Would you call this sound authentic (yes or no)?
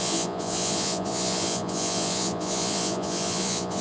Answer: no